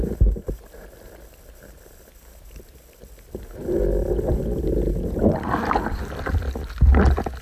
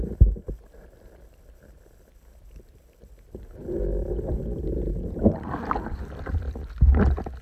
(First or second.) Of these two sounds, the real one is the first